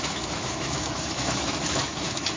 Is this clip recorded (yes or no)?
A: no